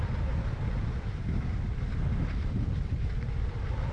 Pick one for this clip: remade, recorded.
recorded